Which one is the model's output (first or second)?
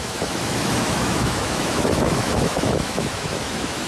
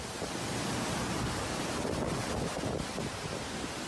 first